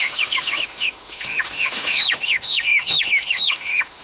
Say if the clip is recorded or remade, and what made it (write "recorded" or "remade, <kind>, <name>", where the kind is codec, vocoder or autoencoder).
remade, autoencoder, DAC-VAE